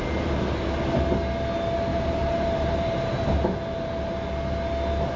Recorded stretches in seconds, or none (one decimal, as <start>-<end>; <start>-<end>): 0.0-1.9; 3.0-5.2

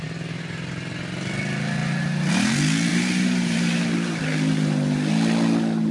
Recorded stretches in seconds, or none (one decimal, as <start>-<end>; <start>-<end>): 0.0-2.9; 4.2-5.9